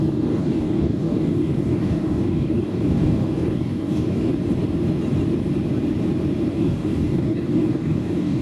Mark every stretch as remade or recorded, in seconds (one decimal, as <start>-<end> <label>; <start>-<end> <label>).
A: 0.0-4.3 remade; 4.3-6.5 recorded; 6.5-8.4 remade